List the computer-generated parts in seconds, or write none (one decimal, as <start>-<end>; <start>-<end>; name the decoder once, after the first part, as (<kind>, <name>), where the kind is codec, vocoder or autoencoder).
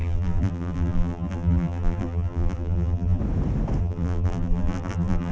0.0-3.2 (vocoder, BigVGAN v2); 3.8-5.3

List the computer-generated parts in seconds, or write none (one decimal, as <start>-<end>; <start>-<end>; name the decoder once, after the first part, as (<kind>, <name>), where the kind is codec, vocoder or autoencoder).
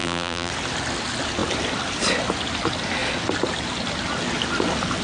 0.0-0.5 (vocoder, BigVGAN v2)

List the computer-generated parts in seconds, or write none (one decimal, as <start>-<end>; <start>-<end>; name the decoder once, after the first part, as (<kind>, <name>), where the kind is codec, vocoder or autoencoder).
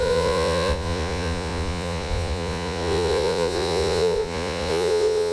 0.0-5.3 (vocoder, Vocos)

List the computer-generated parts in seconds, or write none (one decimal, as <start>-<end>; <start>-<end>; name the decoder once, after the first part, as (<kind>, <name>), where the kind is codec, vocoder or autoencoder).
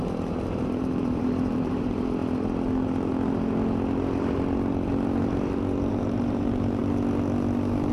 0.0-2.2 (vocoder, BigVGAN v2); 5.9-6.8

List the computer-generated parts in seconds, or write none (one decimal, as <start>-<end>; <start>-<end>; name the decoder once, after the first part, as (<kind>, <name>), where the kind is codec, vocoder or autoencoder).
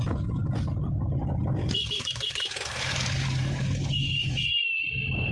1.6-4.8 (codec, DAC)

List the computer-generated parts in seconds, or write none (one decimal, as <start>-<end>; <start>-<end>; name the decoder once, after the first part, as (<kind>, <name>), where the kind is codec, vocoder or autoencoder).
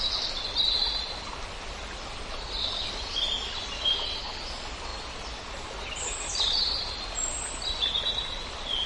none